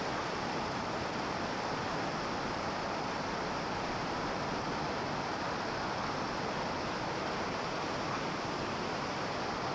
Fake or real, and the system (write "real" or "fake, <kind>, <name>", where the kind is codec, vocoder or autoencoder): real